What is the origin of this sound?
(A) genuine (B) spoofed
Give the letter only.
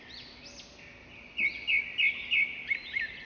A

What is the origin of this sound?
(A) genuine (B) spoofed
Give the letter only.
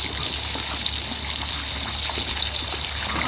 A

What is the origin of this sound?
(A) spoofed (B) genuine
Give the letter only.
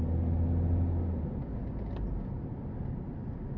B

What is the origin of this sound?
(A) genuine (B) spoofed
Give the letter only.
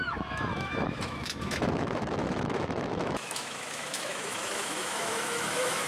B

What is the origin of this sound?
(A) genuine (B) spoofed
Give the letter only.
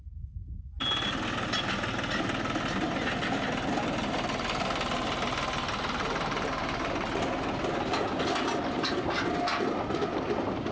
A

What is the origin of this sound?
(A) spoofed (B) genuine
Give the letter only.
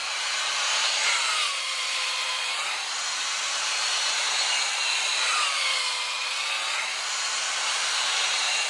A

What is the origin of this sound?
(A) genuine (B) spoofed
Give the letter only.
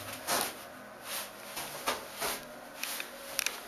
A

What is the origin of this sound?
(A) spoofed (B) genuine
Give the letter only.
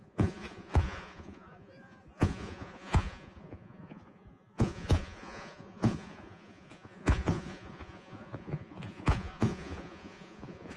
A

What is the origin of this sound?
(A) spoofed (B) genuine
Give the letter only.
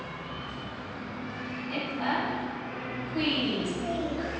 B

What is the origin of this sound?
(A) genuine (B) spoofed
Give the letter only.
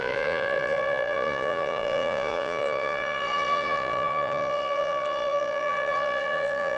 B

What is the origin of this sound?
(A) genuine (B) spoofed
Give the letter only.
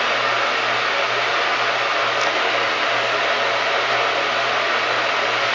A